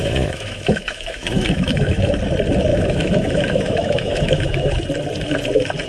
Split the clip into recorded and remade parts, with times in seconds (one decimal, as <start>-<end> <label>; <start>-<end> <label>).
0.0-2.1 remade; 2.1-2.7 recorded; 2.7-4.7 remade; 4.7-5.9 recorded